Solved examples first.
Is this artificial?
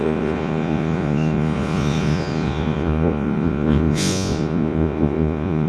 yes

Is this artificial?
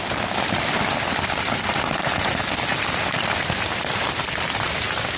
no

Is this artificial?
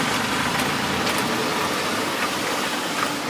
yes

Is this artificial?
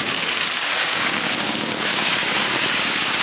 yes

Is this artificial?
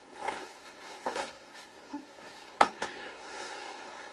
yes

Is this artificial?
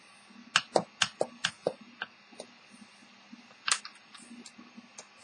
no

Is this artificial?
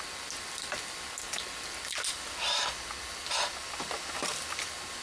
no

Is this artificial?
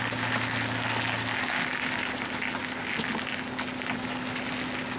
no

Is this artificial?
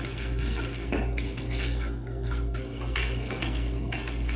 yes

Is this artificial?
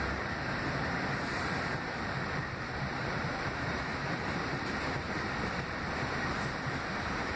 yes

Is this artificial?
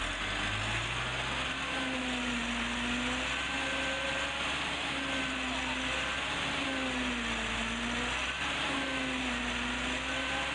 no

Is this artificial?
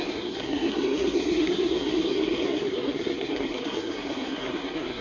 yes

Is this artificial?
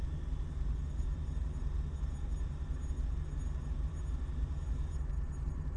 yes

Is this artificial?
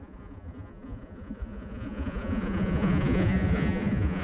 yes